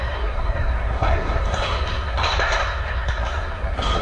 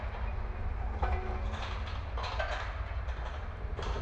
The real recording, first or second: second